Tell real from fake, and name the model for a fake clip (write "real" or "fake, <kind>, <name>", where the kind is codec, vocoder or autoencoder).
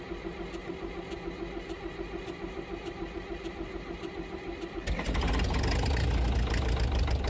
real